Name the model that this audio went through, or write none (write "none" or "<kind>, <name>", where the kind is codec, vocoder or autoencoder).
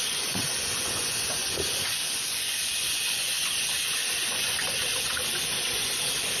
vocoder, Vocos